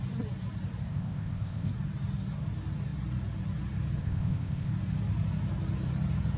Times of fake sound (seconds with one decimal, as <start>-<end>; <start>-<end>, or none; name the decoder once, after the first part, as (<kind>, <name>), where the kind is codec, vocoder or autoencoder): 0.9-1.7 (codec, ZipCodec); 4.0-4.7